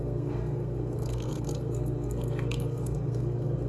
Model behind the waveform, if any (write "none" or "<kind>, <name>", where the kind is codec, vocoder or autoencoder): codec, SNAC